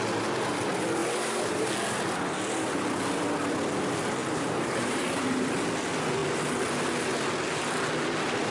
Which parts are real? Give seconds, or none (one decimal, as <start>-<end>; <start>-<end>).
0.0-1.0; 1.7-4.2; 5.5-8.5